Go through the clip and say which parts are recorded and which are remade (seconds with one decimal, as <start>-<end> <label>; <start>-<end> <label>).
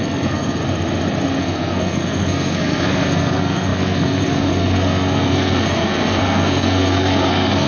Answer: 0.0-0.6 remade; 0.6-1.4 recorded; 1.4-7.7 remade